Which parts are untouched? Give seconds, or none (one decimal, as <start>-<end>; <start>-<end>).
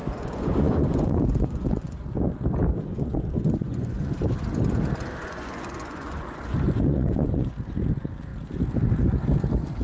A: 2.0-2.9; 4.1-5.2; 7.5-9.8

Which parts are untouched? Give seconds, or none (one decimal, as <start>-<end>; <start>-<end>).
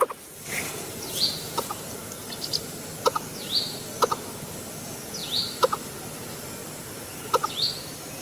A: 0.0-8.2